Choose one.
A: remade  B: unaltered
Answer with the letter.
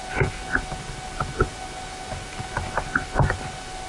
B